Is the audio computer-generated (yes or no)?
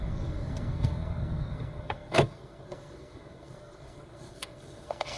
yes